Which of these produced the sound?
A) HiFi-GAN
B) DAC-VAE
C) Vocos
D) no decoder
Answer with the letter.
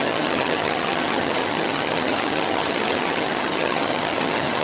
A